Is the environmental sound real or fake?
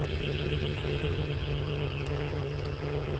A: fake